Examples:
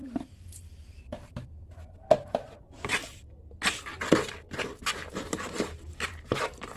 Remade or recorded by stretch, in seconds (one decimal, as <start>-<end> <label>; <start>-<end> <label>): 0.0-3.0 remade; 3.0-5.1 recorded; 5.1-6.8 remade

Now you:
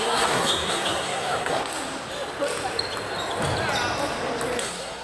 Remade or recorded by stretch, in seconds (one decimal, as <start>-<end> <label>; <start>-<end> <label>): 0.0-1.6 remade; 1.6-4.6 recorded; 4.6-5.0 remade

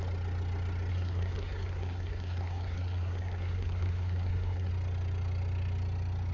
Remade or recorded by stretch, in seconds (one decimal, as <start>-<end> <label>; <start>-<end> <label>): 0.0-0.9 recorded; 0.9-4.7 remade; 4.7-6.3 recorded

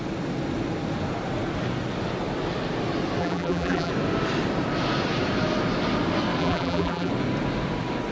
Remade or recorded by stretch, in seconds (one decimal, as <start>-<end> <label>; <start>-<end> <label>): 0.0-3.2 recorded; 3.2-3.9 remade; 3.9-6.4 recorded; 6.4-7.1 remade; 7.1-8.1 recorded

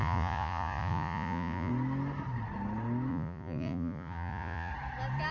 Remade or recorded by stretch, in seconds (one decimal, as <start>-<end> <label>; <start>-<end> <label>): 0.0-1.7 remade; 1.7-3.1 recorded; 3.1-4.7 remade; 4.7-5.3 recorded

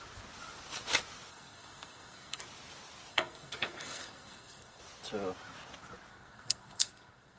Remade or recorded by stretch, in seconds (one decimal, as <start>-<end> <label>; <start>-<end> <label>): 0.0-1.3 recorded; 1.3-2.4 remade; 2.4-3.1 recorded; 3.1-4.8 remade; 4.8-6.1 recorded; 6.1-7.4 remade

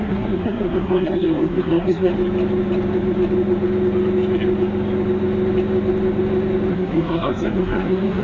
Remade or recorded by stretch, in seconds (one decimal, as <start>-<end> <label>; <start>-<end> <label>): 0.0-2.1 remade; 2.1-6.7 recorded; 6.7-8.2 remade

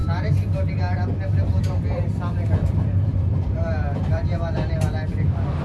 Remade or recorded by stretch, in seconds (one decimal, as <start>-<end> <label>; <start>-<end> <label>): 0.0-1.6 recorded; 1.6-5.6 remade